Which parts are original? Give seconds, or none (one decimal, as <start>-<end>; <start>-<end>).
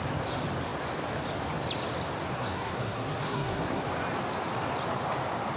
0.0-2.3; 3.8-5.6